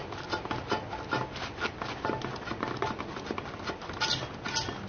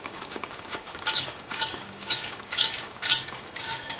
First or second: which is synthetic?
second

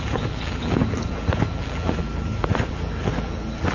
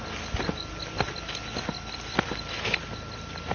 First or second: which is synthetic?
first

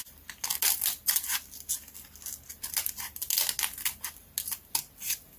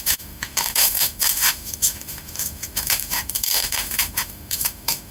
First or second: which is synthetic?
second